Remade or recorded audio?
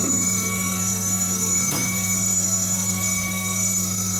remade